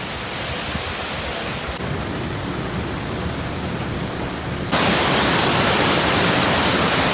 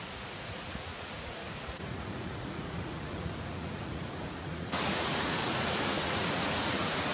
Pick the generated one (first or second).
second